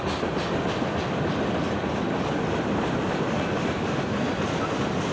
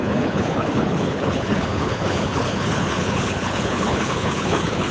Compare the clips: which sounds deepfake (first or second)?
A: second